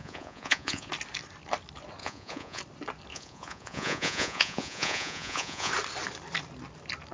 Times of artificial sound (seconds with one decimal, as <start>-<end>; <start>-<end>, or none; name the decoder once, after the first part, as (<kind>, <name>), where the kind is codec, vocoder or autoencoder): 0.0-0.9 (vocoder, Vocos); 2.0-2.6; 3.1-5.7

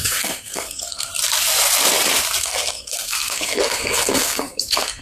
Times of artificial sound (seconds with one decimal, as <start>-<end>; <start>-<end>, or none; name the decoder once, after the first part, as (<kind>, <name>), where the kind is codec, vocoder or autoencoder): 0.0-1.1 (codec, SNAC); 2.4-5.0

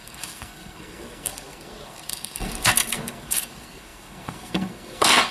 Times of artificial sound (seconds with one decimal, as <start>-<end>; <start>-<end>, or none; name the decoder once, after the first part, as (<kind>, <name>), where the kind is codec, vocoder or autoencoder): 0.0-5.3 (codec, SNAC)

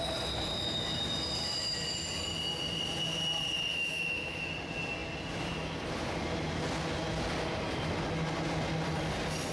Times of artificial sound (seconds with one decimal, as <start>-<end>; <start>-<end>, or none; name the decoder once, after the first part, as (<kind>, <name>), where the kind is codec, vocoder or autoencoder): 3.7-4.5 (autoencoder, DAC-VAE)

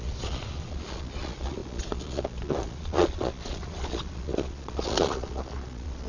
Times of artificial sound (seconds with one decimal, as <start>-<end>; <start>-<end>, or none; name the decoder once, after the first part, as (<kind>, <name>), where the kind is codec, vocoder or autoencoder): 0.0-6.1 (vocoder, Vocos)

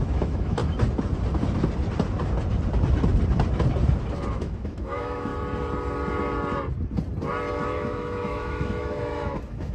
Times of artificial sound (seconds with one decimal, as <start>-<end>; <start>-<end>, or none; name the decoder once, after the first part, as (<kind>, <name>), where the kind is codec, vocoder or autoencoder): 0.0-0.6 (autoencoder, DAC-VAE); 4.3-5.3; 7.5-9.7

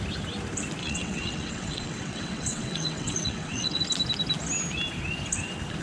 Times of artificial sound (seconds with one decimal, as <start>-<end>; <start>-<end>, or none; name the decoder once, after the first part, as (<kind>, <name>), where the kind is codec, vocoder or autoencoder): 0.8-3.8 (vocoder, WaveNeXt)